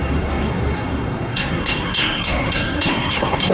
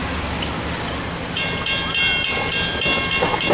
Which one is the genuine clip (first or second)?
second